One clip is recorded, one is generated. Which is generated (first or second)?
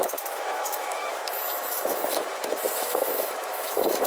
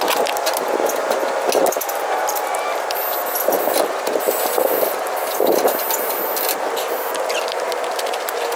first